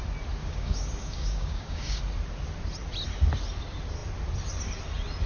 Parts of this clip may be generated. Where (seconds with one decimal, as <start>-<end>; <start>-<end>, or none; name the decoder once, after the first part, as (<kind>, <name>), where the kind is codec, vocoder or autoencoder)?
0.4-2.0 (codec, DAC)